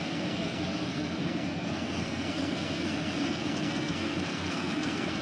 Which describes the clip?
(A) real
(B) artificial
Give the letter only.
B